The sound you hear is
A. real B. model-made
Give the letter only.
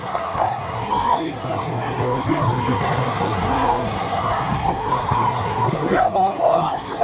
B